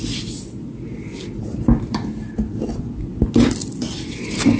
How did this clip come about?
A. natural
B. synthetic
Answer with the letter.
A